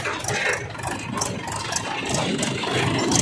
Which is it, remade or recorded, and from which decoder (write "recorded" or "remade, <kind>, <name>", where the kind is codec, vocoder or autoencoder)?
recorded